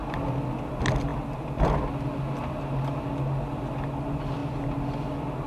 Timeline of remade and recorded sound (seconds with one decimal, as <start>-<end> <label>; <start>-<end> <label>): 0.0-5.5 recorded